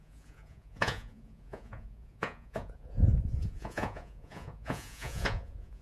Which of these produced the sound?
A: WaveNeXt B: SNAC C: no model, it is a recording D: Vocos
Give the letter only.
D